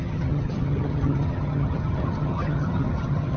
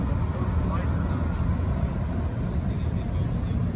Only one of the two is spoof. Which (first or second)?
first